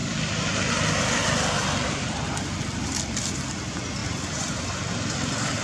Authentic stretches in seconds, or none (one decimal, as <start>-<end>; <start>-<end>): 0.0-5.6